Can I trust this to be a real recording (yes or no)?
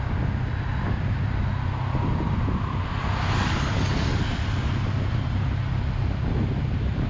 yes